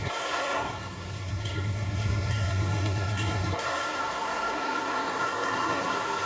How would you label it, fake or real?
fake